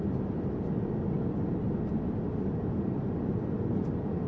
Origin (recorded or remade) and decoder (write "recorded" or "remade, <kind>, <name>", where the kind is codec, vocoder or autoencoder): recorded